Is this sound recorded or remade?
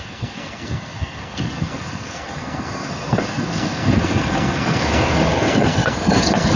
remade